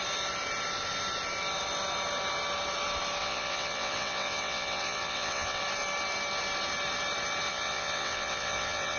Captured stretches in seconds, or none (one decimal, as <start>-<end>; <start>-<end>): 0.0-3.2; 5.6-7.5